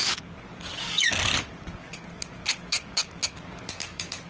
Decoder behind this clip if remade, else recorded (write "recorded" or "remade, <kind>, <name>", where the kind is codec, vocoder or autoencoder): remade, codec, DAC